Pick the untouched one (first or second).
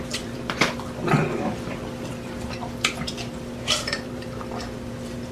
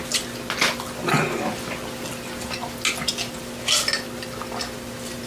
second